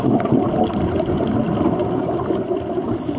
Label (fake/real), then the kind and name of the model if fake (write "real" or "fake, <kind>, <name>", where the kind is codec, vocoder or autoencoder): real